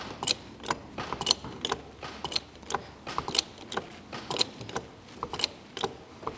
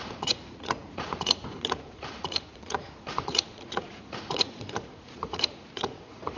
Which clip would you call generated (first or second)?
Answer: second